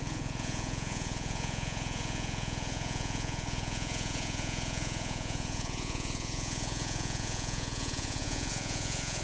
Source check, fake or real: fake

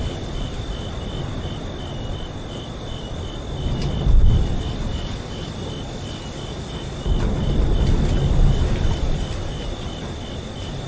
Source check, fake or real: real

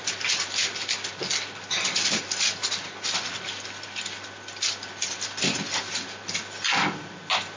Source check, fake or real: real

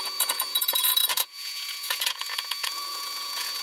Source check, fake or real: fake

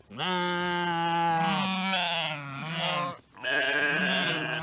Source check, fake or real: real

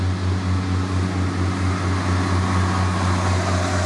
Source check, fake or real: real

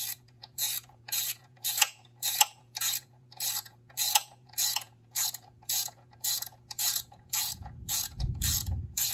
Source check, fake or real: fake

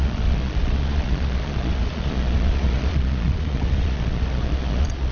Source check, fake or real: fake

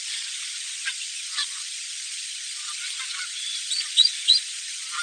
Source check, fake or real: fake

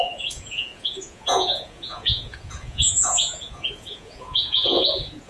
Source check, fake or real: fake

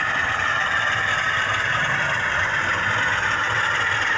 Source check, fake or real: real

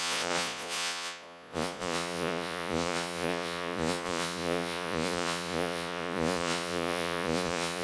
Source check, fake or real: fake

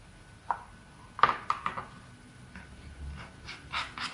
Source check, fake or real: real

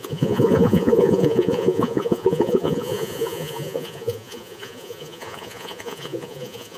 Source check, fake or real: fake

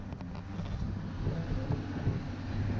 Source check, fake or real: real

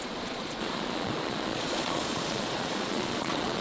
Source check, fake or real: fake